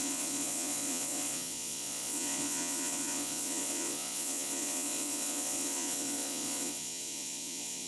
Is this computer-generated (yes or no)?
yes